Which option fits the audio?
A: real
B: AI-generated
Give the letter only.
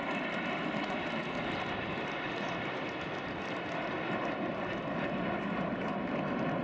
A